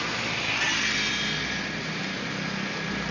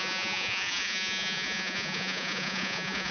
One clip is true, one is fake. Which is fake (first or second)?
second